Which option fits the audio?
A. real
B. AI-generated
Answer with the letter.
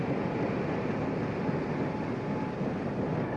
A